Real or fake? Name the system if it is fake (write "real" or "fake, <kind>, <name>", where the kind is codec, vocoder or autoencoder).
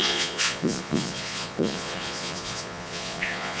fake, vocoder, Vocos